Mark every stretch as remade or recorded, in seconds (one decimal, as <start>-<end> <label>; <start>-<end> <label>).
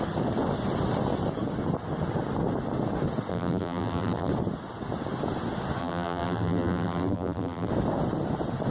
0.0-3.3 recorded; 3.3-4.3 remade; 4.3-5.8 recorded; 5.8-7.7 remade; 7.7-8.7 recorded